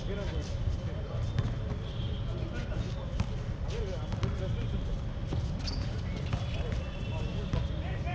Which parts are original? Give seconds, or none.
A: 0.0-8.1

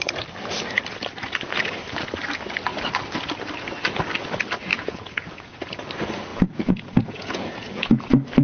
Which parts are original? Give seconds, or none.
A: 0.0-4.7; 5.8-6.3; 8.0-8.4

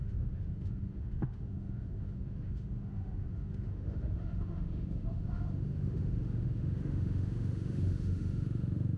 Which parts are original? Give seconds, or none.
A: none

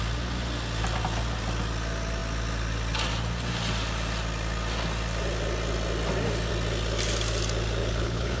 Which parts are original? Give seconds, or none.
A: 0.0-7.8

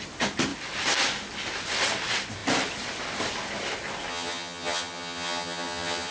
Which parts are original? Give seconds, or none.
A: 0.0-4.1

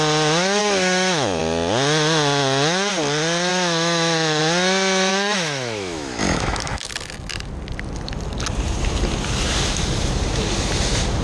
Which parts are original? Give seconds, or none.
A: 0.0-0.6; 1.4-3.5; 4.4-5.1; 6.9-11.2